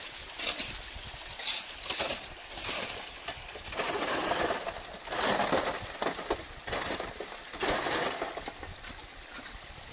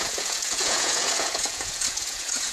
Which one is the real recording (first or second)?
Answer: first